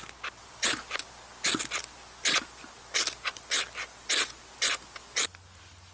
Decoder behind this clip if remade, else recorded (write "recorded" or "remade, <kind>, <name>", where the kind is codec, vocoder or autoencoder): recorded